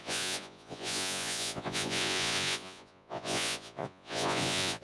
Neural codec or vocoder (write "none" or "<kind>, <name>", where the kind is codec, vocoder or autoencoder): vocoder, Vocos